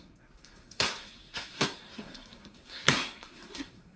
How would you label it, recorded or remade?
remade